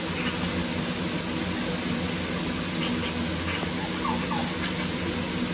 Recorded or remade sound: recorded